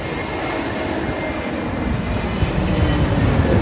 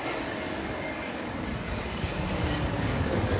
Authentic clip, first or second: first